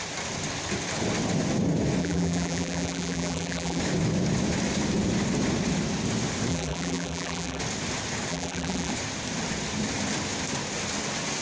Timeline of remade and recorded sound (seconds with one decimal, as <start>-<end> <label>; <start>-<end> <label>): 0.0-2.0 recorded; 2.0-3.8 remade; 3.8-6.5 recorded; 6.5-7.6 remade; 7.6-8.3 recorded; 8.3-8.9 remade; 8.9-11.4 recorded